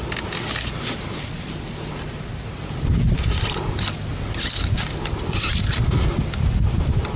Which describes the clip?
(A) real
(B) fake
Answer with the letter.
A